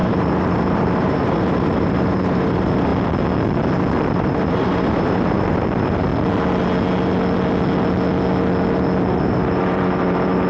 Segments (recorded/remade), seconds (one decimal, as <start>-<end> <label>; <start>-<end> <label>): 0.0-2.9 remade; 2.9-4.0 recorded; 4.0-6.1 remade; 6.1-9.1 recorded; 9.1-10.5 remade